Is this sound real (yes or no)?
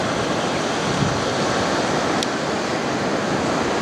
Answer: yes